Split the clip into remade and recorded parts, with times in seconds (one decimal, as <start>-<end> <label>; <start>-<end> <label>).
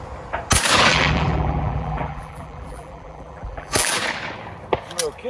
0.0-0.9 recorded; 0.9-3.9 remade; 3.9-5.3 recorded